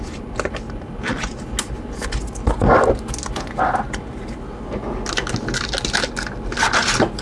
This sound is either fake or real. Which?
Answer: real